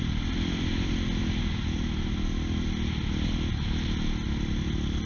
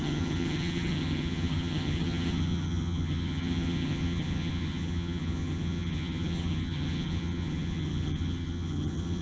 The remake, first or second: second